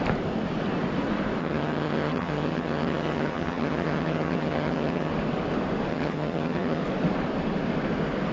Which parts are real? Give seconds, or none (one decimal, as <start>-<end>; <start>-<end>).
0.0-1.4; 5.1-5.9; 6.8-8.3